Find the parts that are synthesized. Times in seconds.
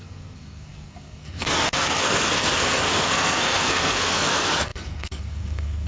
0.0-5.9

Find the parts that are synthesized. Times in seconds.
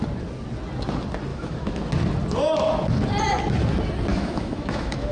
1.3-1.9; 4.1-5.1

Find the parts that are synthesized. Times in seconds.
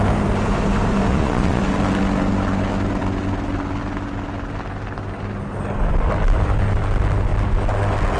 1.1-1.6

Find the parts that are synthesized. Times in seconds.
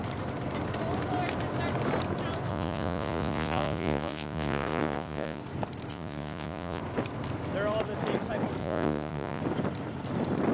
2.5-5.4; 5.9-6.8; 8.6-9.4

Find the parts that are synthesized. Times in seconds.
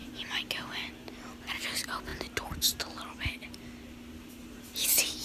none